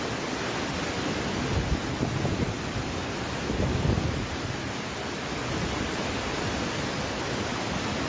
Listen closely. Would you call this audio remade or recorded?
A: recorded